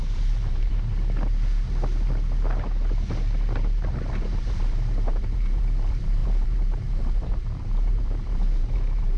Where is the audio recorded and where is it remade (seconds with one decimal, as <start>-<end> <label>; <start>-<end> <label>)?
0.0-0.9 remade; 0.9-4.1 recorded; 4.1-9.2 remade